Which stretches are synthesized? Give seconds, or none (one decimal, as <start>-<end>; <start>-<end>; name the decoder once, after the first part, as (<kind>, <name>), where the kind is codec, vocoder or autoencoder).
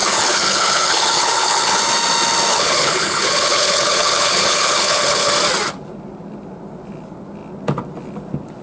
0.0-1.8 (codec, HILCodec); 2.5-5.3